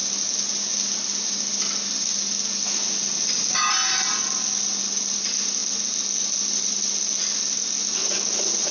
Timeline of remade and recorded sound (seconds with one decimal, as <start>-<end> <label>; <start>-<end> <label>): 0.0-8.7 recorded